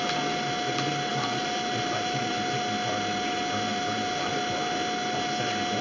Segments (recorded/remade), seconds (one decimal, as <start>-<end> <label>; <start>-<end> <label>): 0.0-1.1 recorded; 1.1-2.3 remade; 2.3-3.7 recorded; 3.7-4.3 remade; 4.3-5.8 recorded